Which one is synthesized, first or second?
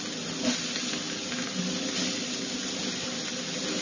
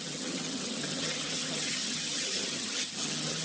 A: second